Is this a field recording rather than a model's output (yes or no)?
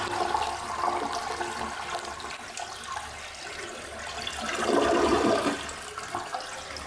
yes